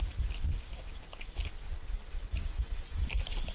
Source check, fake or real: real